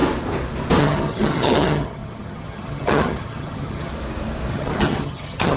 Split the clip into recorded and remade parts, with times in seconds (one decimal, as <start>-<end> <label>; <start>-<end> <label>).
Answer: 0.0-0.8 recorded; 0.8-3.9 remade; 3.9-4.5 recorded; 4.5-5.6 remade